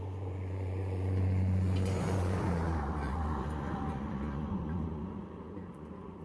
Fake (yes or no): yes